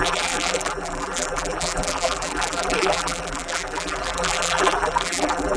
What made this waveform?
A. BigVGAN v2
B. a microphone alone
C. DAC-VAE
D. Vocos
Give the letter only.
A